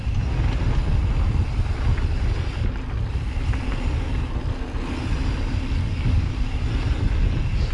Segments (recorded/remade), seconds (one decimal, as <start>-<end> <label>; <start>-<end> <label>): 0.0-5.8 recorded; 5.8-6.3 remade; 6.3-7.7 recorded